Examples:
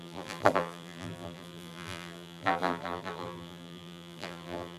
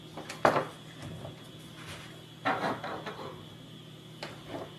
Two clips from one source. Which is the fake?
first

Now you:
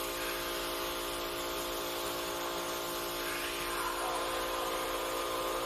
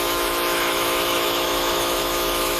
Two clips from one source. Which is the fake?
second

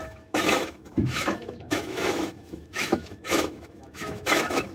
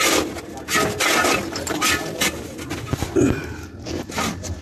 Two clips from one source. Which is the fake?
first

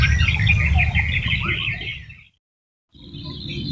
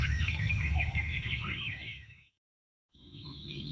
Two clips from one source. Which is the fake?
second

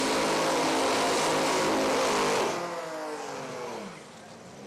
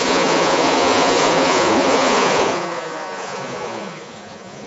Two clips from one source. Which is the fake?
second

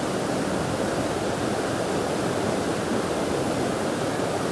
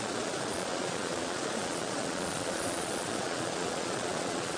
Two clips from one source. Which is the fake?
second